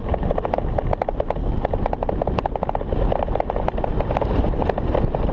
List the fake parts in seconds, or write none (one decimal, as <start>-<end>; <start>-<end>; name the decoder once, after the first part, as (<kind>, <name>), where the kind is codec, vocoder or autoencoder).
none